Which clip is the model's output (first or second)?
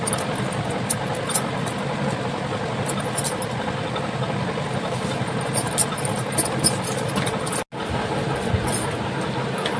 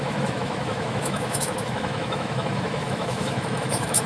second